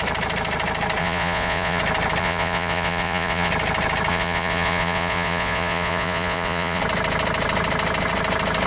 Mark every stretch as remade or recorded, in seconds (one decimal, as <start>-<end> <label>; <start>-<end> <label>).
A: 0.0-1.0 recorded; 1.0-1.8 remade; 1.8-2.2 recorded; 2.2-3.5 remade; 3.5-4.1 recorded; 4.1-6.8 remade; 6.8-8.7 recorded